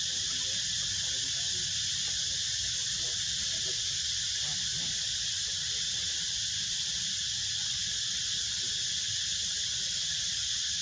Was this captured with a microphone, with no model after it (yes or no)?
yes